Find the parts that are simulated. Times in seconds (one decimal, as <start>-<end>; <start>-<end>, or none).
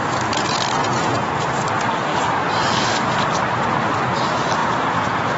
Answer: 0.8-1.5; 4.6-5.4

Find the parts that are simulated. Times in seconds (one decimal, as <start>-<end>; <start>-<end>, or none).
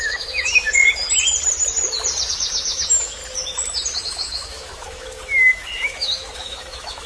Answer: 0.0-0.8; 2.3-3.2; 4.0-7.1